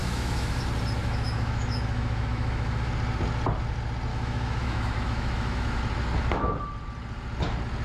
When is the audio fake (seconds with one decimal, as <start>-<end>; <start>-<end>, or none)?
0.0-0.6; 1.0-2.9; 4.1-5.8